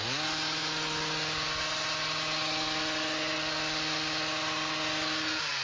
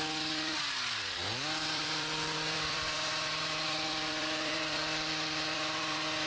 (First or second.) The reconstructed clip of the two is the second